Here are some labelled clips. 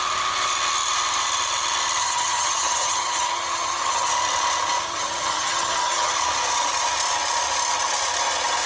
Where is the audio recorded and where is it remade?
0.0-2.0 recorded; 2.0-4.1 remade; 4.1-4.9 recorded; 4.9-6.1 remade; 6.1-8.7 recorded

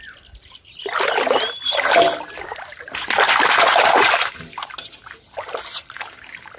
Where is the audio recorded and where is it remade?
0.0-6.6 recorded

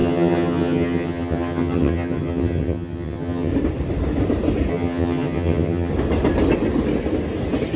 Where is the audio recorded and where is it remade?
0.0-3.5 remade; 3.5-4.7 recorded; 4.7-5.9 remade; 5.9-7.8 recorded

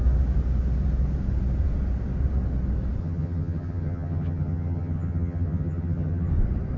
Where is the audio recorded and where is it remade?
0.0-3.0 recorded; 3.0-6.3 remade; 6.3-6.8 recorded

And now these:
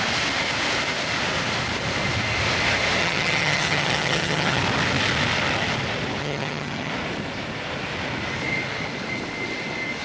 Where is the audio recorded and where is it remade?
0.0-3.0 recorded; 3.0-4.6 remade; 4.6-6.2 recorded; 6.2-6.9 remade; 6.9-10.0 recorded

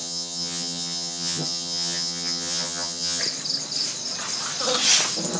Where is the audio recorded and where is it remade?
0.0-3.2 remade; 3.2-5.4 recorded

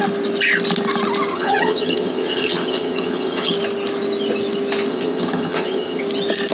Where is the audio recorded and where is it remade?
0.0-1.3 recorded; 1.3-3.5 remade; 3.5-4.9 recorded; 4.9-6.0 remade; 6.0-6.5 recorded